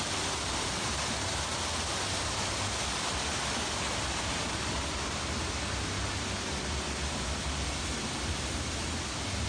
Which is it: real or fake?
real